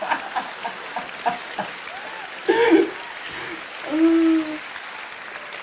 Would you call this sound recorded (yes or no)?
yes